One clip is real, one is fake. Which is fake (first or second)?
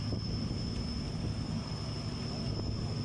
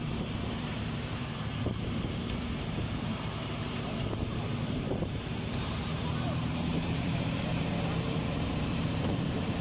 second